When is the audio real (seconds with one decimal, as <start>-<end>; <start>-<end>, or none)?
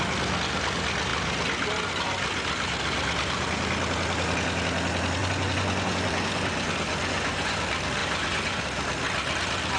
0.0-5.2; 7.6-8.0; 8.6-9.8